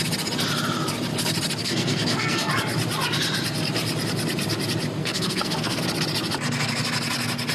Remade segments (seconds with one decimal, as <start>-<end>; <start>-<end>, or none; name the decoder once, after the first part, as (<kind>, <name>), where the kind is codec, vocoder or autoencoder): 1.6-2.5 (codec, SNAC); 5.0-5.8